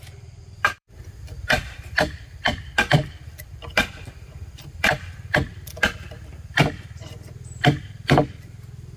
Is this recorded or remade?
remade